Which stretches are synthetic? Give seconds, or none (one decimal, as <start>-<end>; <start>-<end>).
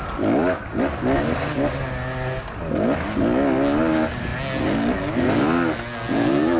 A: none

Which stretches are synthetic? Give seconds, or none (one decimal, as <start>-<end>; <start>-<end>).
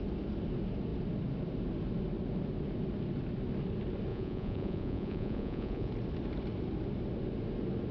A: 4.1-5.9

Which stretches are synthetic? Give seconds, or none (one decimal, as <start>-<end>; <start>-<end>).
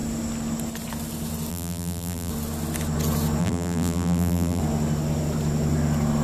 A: 1.5-2.3; 3.4-4.6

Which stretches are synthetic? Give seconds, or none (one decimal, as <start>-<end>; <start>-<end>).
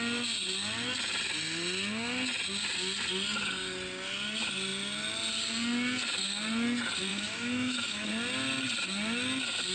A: 7.1-8.1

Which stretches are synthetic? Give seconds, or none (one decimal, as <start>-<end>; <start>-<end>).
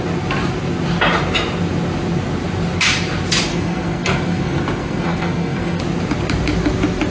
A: 3.5-5.8